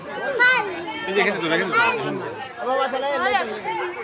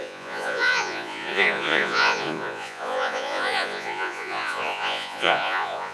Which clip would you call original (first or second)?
first